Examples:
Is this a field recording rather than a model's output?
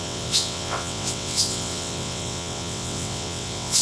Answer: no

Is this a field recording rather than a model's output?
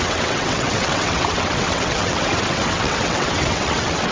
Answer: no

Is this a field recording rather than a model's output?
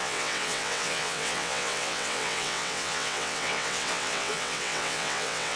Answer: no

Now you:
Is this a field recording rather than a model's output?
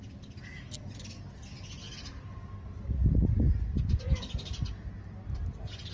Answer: yes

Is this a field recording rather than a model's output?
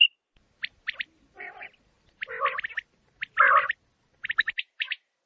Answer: yes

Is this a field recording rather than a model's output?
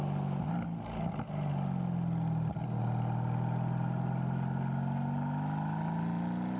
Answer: yes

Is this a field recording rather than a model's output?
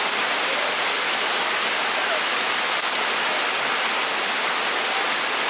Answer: yes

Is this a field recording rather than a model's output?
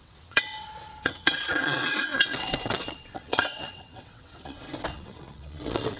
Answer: no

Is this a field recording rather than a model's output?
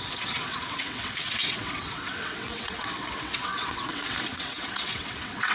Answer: no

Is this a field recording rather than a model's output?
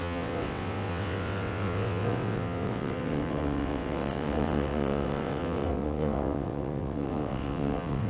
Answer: no